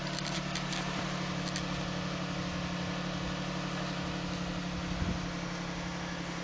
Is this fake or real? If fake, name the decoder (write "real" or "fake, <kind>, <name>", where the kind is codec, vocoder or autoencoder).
real